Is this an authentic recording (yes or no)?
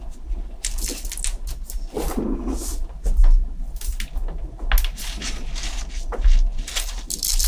yes